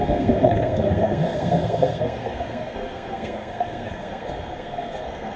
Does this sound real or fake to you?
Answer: fake